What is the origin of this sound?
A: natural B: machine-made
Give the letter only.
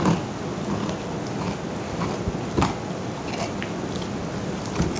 A